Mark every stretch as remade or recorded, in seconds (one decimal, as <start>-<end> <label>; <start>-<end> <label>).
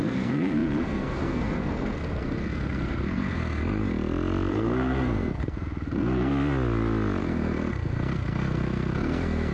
0.0-3.8 remade; 3.8-4.5 recorded; 4.5-6.3 remade; 6.3-7.2 recorded; 7.2-9.5 remade